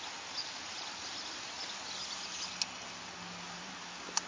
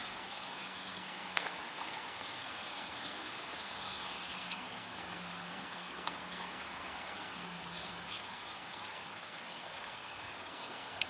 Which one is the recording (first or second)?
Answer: first